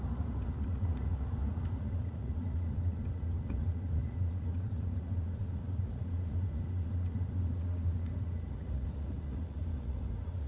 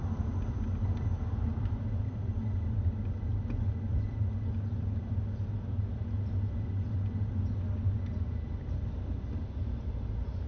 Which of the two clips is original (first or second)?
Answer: second